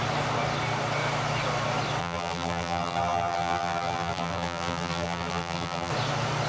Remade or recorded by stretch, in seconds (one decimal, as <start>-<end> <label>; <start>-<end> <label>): 0.0-2.0 recorded; 2.0-5.9 remade; 5.9-6.5 recorded